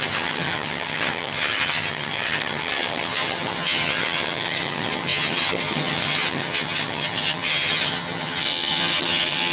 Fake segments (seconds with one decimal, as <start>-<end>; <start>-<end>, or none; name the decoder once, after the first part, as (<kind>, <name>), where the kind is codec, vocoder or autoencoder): 0.0-9.5 (vocoder, HiFi-GAN)